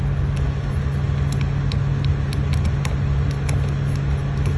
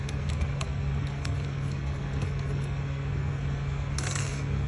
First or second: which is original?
first